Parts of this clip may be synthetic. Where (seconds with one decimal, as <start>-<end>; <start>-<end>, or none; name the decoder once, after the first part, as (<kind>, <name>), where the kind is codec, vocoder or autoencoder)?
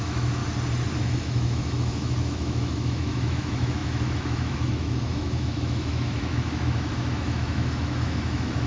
0.0-0.4 (autoencoder, DAC-VAE); 1.0-8.7